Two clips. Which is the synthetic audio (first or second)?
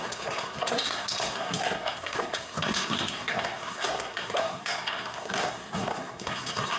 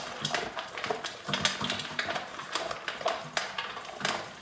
first